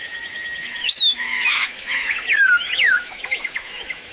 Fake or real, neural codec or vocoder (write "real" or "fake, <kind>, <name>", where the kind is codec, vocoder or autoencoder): fake, autoencoder, DAC-VAE